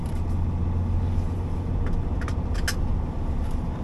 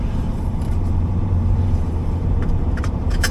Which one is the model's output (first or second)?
second